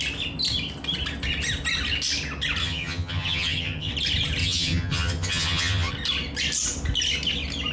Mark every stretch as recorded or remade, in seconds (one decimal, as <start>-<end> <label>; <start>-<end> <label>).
0.0-2.6 recorded; 2.6-3.9 remade; 3.9-4.4 recorded; 4.4-5.9 remade; 5.9-7.7 recorded